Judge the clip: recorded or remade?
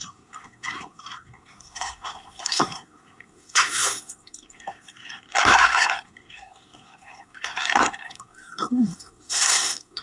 remade